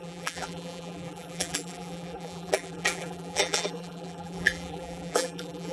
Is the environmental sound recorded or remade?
remade